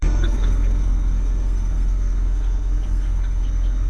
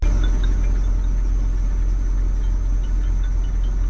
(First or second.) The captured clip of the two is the second